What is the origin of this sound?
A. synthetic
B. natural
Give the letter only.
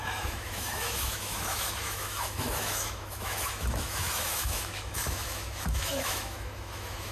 A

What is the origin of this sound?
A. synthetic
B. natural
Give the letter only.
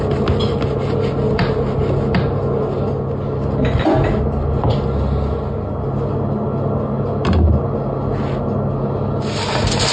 B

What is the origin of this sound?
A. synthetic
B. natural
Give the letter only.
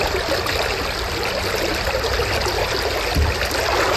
B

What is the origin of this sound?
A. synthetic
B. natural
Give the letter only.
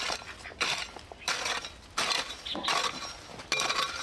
B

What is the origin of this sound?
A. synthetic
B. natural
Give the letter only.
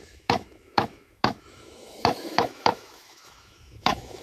A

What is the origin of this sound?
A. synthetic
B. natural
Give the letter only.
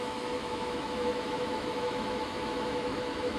A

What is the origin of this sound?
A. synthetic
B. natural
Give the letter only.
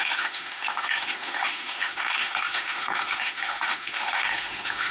A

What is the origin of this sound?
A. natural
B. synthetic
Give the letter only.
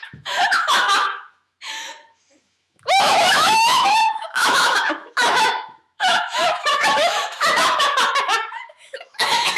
B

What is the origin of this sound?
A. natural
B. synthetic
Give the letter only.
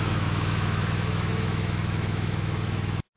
B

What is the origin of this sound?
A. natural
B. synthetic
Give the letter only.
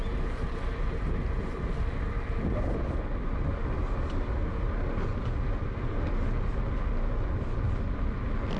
A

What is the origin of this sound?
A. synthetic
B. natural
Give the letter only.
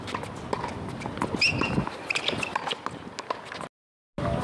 B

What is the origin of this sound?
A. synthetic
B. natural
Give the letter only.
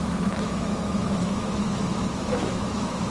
A